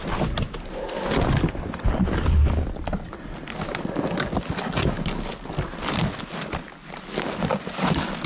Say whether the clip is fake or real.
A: real